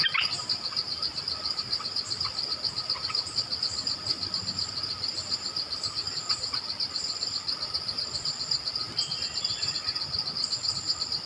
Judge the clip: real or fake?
real